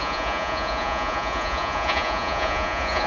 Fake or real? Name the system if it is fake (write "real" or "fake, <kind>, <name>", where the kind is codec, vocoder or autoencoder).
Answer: fake, vocoder, Vocos